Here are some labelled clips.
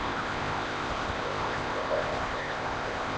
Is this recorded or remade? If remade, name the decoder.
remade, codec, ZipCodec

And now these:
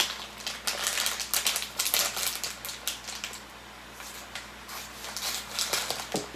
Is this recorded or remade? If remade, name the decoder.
recorded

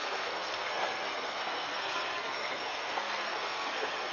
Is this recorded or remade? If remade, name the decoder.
remade, codec, SNAC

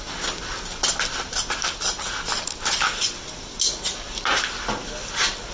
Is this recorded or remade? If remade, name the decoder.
recorded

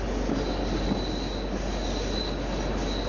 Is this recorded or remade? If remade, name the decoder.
recorded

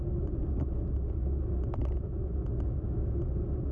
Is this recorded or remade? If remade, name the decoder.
recorded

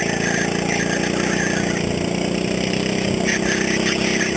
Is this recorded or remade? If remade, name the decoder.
recorded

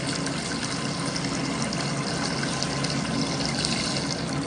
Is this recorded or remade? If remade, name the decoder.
recorded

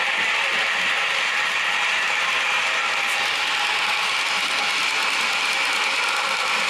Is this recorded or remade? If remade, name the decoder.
recorded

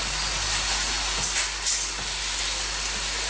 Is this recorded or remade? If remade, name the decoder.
recorded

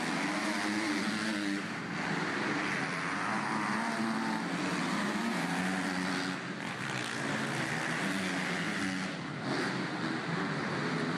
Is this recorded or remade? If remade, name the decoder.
recorded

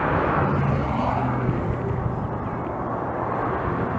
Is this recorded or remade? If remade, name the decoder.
recorded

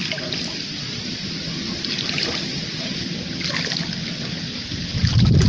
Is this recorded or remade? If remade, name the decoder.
recorded